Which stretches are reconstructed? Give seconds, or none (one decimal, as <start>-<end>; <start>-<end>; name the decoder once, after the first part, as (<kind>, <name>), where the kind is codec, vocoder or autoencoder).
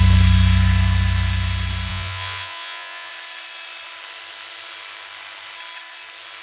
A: 1.9-3.1 (vocoder, Vocos)